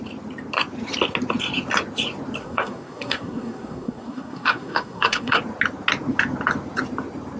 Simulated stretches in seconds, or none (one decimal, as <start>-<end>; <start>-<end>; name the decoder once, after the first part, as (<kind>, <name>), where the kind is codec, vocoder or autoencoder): 2.4-5.4 (codec, SNAC)